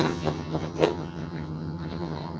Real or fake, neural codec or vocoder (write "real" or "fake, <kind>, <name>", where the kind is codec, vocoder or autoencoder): fake, vocoder, HiFi-GAN